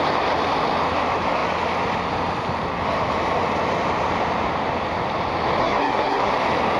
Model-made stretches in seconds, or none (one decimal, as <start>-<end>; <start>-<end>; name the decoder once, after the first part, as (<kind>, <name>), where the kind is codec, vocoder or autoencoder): 5.6-6.3 (codec, SNAC)